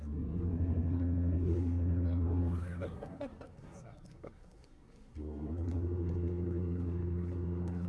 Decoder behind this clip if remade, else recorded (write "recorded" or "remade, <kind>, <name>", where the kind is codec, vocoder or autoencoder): remade, codec, SNAC